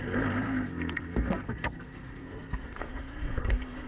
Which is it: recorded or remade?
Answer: remade